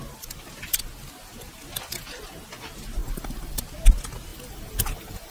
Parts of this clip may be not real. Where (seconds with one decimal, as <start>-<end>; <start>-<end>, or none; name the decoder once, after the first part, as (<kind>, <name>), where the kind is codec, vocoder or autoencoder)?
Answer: 3.0-3.6 (vocoder, BigVGAN v2); 4.3-5.3